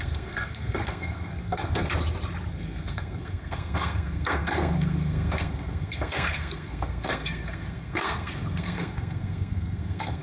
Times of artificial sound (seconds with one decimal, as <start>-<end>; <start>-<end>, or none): 0.0-1.9; 2.5-10.2